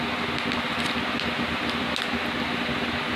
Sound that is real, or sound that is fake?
real